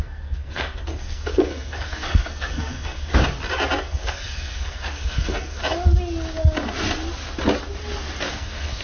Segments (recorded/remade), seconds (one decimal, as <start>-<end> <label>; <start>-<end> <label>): 0.0-3.1 remade; 3.1-3.8 recorded; 3.8-5.6 remade; 5.6-8.3 recorded; 8.3-8.8 remade